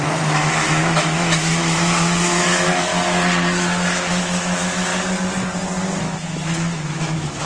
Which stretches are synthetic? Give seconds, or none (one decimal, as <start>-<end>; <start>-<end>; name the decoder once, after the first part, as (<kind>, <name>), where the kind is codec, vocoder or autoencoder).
0.0-2.9 (autoencoder, DAC-VAE); 4.1-4.9; 6.0-7.5